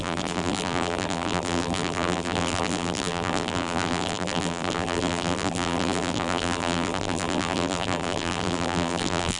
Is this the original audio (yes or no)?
no